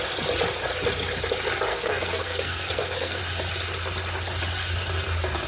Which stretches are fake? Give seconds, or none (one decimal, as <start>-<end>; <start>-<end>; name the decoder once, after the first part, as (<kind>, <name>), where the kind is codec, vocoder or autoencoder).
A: 1.7-3.2 (codec, SNAC)